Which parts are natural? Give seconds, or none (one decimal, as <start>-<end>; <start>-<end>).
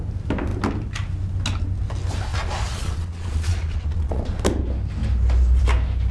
0.0-2.3; 4.2-6.1